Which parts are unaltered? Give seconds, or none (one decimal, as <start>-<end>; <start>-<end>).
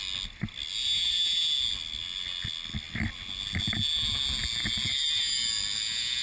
0.0-6.2